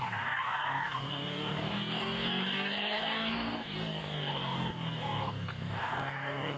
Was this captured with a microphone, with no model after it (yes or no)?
no